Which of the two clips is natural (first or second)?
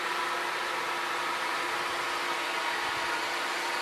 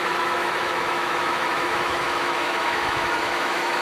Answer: first